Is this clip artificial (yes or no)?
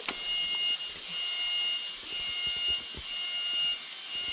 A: no